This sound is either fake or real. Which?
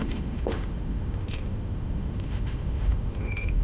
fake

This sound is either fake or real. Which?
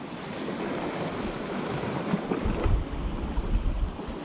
real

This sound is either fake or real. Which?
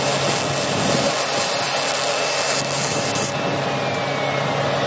real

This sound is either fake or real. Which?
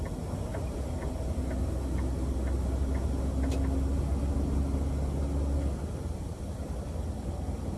real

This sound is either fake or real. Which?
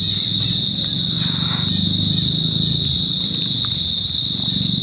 real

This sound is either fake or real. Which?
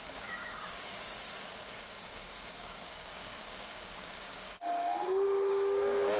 fake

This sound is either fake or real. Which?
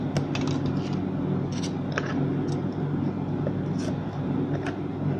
real